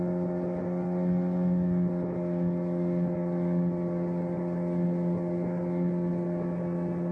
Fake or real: real